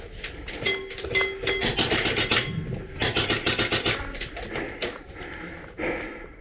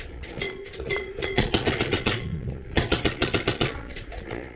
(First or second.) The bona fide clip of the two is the first